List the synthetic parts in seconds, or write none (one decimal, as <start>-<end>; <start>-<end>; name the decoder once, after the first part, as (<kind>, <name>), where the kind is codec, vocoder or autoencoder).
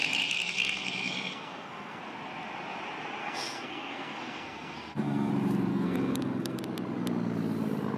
0.0-2.0 (codec, SNAC); 3.2-5.3; 5.7-6.6